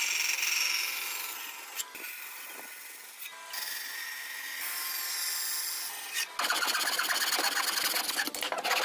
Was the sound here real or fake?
real